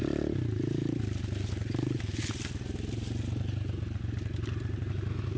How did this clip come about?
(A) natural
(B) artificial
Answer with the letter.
A